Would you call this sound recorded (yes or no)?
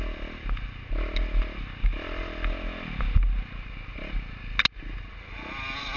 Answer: yes